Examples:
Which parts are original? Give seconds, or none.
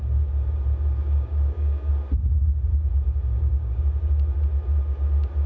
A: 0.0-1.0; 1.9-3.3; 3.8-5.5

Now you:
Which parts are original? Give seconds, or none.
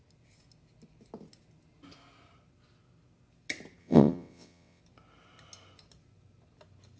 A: 0.0-3.8; 4.8-7.0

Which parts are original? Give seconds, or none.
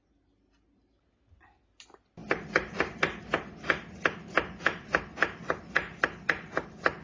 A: 0.0-7.0